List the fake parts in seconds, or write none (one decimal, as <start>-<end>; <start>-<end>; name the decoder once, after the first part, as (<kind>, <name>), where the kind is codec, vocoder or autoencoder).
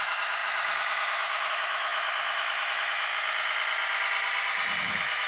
0.0-3.1 (autoencoder, DAC-VAE); 4.8-5.3